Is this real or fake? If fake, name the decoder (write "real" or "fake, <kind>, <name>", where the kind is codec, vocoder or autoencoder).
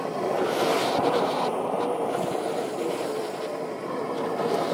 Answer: real